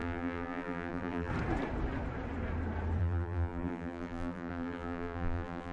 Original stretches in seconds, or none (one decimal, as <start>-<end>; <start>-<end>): 1.3-3.0